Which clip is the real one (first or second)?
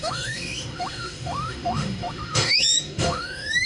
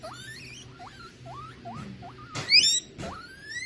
second